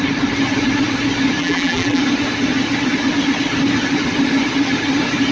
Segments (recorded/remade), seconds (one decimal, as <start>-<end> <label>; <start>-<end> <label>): 0.0-1.4 recorded; 1.4-2.0 remade; 2.0-5.3 recorded